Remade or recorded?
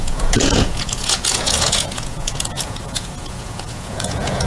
remade